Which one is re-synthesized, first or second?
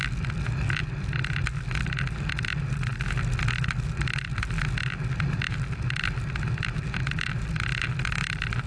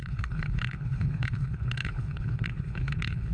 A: second